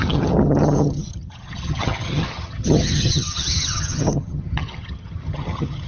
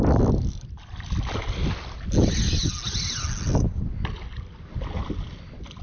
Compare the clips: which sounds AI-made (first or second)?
first